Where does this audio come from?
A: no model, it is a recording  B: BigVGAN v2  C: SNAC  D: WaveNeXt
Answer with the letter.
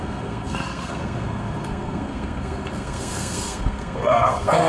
C